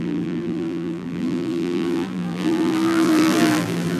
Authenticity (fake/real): fake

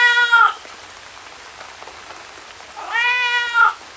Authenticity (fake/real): real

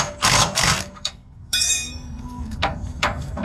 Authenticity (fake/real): fake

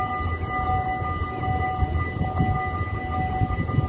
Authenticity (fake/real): real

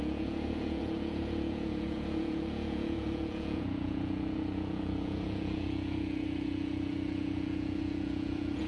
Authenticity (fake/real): fake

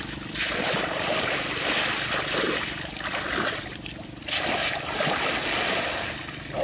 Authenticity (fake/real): real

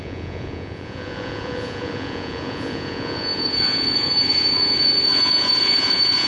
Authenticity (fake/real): fake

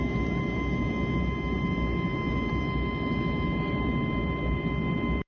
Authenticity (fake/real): fake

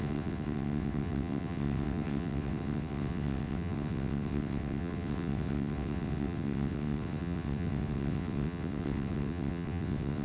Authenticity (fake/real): fake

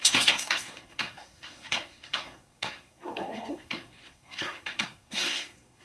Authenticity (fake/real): fake